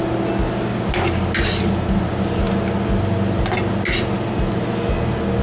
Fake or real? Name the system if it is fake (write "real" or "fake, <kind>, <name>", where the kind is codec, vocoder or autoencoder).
real